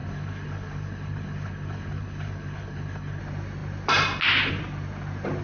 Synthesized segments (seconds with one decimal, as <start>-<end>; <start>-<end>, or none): 0.0-3.2